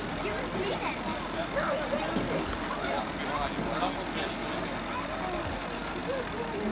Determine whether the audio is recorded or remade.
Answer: recorded